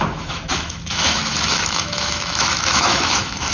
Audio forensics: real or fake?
fake